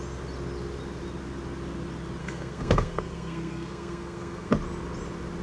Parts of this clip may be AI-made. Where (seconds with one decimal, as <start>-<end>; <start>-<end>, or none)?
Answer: 2.2-4.5